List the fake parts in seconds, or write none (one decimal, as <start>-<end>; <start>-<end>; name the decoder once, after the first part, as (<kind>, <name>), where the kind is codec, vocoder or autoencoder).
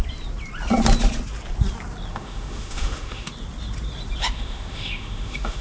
2.1-3.3 (autoencoder, DAC-VAE); 4.2-5.6